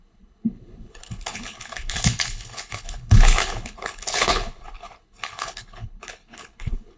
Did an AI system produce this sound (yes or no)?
yes